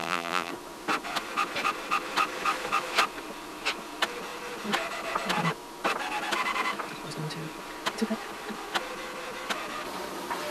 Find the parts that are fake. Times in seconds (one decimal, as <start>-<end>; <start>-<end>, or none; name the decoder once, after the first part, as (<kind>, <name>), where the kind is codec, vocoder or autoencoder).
0.0-0.5 (vocoder, BigVGAN v2)